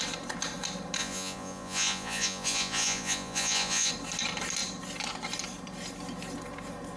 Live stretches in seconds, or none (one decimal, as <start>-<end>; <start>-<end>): 0.0-1.0; 3.9-7.0